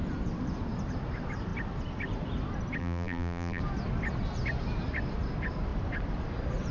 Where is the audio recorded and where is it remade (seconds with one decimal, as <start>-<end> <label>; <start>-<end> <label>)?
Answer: 0.0-2.8 recorded; 2.8-3.6 remade; 3.6-6.7 recorded